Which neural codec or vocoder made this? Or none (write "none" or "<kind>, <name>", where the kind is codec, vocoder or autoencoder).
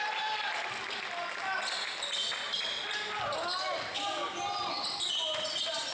none